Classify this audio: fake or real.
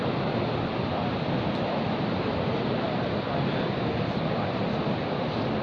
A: real